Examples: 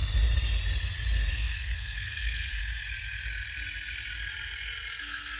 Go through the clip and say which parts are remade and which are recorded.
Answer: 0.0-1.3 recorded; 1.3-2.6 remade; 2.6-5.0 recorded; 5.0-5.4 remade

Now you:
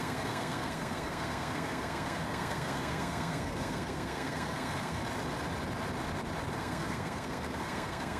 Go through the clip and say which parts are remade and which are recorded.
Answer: 0.0-5.0 remade; 5.0-6.6 recorded; 6.6-8.2 remade

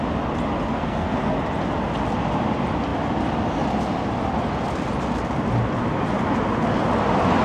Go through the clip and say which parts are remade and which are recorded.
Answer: 0.0-0.7 recorded; 0.7-1.3 remade; 1.3-7.4 recorded

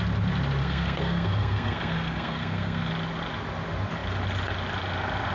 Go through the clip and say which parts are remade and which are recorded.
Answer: 0.0-0.6 recorded; 0.6-2.9 remade; 2.9-5.3 recorded

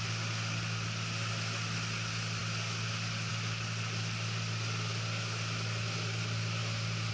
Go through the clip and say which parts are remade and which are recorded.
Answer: 0.0-7.1 recorded

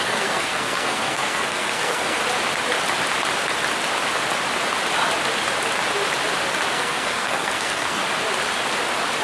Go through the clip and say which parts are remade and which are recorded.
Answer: 0.0-2.2 remade; 2.2-6.7 recorded; 6.7-8.0 remade; 8.0-9.2 recorded

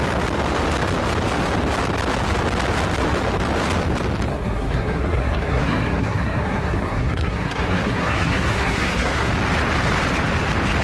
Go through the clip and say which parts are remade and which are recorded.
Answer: 0.0-4.3 recorded; 4.3-9.3 remade; 9.3-10.8 recorded

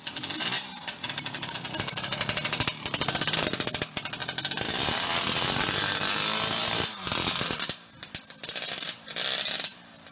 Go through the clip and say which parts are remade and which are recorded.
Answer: 0.0-10.1 recorded